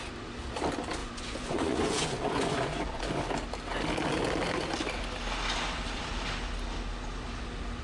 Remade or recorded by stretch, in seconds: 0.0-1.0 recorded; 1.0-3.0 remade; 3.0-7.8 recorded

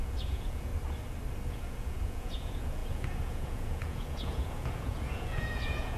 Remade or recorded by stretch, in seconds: 0.0-0.7 remade; 0.7-1.5 recorded; 1.5-6.0 remade

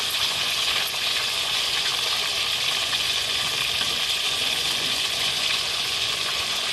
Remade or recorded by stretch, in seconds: 0.0-1.9 remade; 1.9-2.8 recorded; 2.8-3.5 remade; 3.5-4.0 recorded; 4.0-6.7 remade